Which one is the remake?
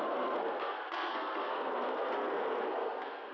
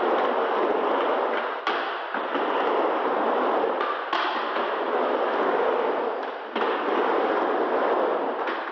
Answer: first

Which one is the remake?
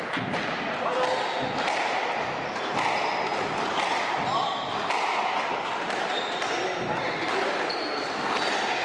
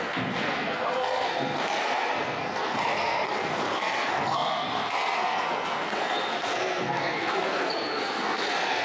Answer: second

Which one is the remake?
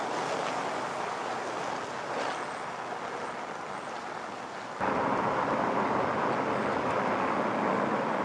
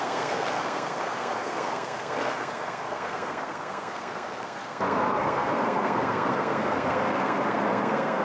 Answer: second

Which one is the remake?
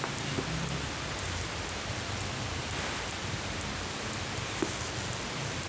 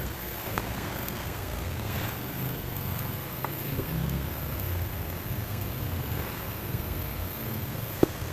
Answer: second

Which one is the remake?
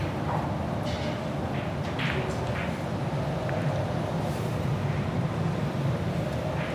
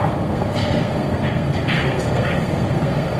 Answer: second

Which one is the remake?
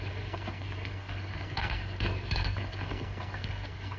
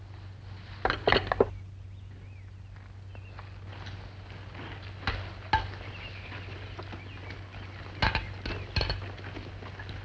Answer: first